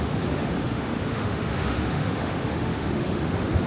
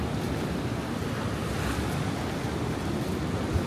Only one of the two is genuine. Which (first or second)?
second